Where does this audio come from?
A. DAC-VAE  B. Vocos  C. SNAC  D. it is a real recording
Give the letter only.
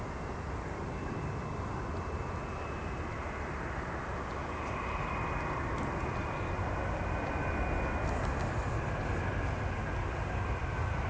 D